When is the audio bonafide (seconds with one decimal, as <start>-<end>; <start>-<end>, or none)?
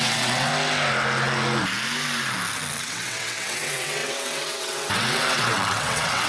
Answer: 0.5-2.8